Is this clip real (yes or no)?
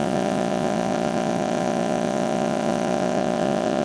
no